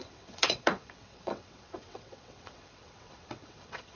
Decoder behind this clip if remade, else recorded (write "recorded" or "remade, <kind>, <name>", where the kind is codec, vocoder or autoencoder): remade, vocoder, WaveNeXt